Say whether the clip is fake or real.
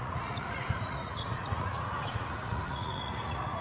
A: fake